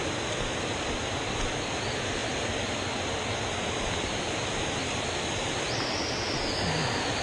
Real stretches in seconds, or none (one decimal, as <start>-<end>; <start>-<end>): 0.0-7.2